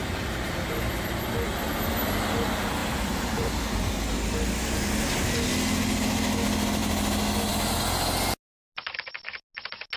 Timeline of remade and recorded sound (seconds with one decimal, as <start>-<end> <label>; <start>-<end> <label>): 0.0-2.8 recorded; 2.8-3.6 remade; 3.6-10.0 recorded